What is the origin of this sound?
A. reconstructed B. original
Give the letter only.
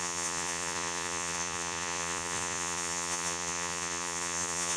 A